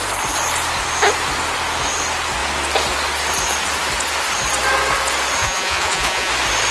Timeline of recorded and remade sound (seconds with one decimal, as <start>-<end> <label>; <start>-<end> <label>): 0.0-5.4 recorded; 5.4-6.3 remade; 6.3-6.7 recorded